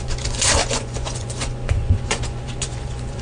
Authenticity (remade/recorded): remade